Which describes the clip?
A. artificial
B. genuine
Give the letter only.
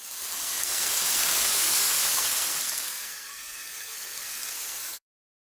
A